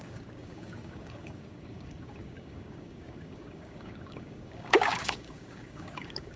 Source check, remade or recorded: remade